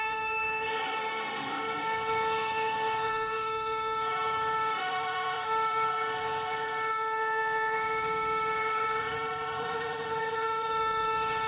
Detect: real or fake fake